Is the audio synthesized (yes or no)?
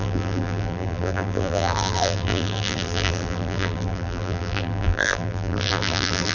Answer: yes